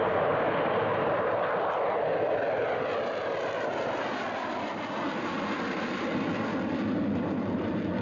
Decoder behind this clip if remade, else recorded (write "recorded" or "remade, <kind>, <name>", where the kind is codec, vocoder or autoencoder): recorded